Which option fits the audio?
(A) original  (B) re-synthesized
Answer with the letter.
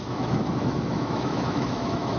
B